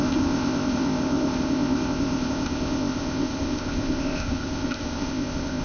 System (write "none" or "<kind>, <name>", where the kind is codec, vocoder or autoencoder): codec, ZipCodec